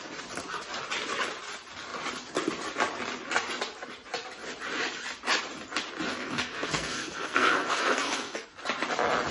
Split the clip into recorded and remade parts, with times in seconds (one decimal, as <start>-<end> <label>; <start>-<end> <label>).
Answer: 0.0-6.1 recorded; 6.1-8.5 remade; 8.5-9.3 recorded